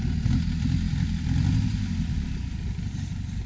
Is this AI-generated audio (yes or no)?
no